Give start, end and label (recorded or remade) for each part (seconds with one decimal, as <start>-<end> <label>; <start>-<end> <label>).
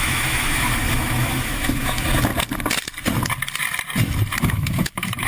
0.0-2.3 remade; 2.3-4.4 recorded; 4.4-5.3 remade